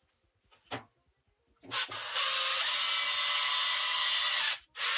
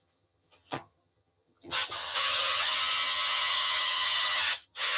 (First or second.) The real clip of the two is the first